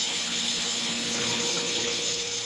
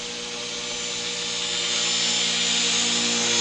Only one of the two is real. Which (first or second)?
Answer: second